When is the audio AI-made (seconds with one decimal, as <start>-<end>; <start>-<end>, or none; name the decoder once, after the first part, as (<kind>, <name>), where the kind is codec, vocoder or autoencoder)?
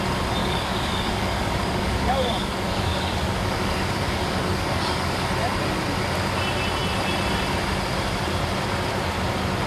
0.4-5.3 (codec, DAC)